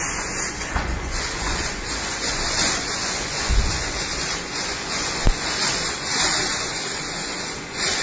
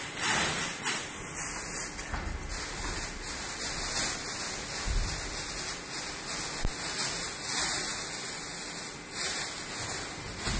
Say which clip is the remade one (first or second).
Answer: first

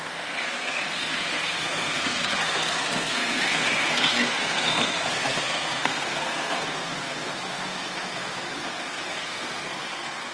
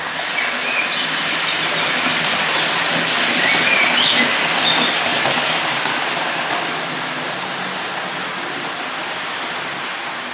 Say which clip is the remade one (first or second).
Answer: first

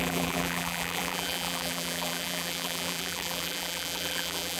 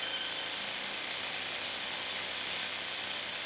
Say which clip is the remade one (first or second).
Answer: first